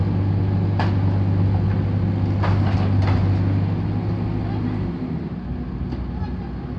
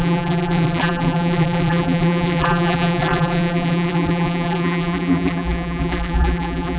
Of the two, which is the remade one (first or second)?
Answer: second